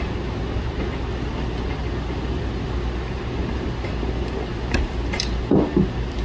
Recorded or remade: recorded